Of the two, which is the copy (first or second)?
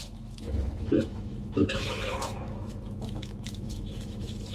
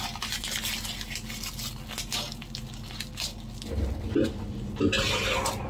first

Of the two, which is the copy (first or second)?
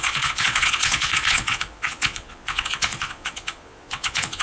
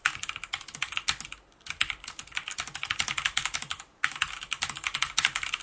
first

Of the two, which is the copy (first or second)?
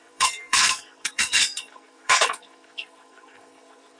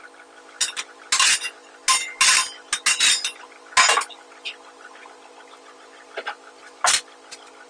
first